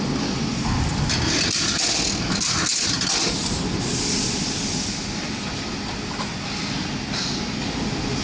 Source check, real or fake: real